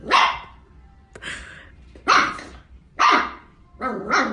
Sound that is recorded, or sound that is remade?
remade